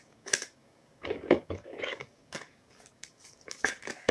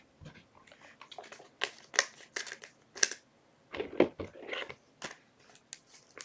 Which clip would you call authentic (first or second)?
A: second